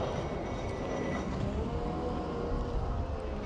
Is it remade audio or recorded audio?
recorded